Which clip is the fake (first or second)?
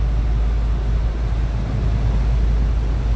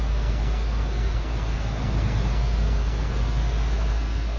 second